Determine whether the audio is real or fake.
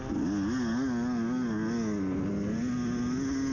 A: real